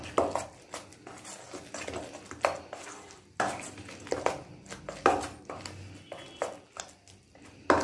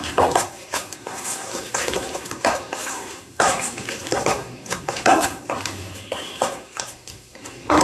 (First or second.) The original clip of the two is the first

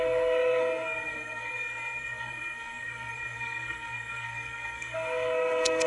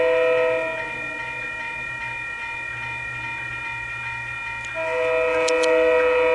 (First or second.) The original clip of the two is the second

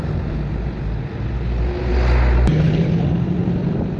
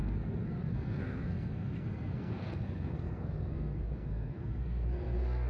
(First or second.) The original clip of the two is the first